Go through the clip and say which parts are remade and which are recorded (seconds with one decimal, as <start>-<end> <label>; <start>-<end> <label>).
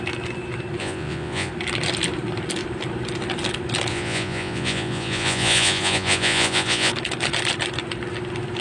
0.0-0.8 recorded; 0.8-1.5 remade; 1.5-3.9 recorded; 3.9-6.9 remade; 6.9-8.6 recorded